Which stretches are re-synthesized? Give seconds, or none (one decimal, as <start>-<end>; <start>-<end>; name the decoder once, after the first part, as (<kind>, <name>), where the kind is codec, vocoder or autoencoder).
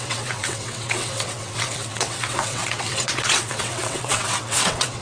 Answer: 0.0-5.0 (vocoder, WaveNeXt)